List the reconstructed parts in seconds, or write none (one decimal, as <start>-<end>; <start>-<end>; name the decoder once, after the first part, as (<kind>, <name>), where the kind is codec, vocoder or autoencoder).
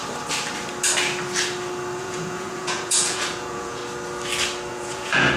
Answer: 2.0-3.8 (vocoder, Vocos); 4.7-5.4